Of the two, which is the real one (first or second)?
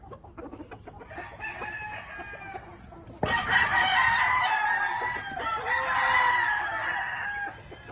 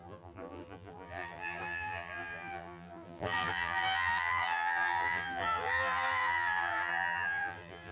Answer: first